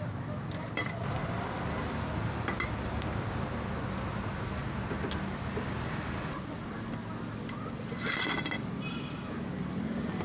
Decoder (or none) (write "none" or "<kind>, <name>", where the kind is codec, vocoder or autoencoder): none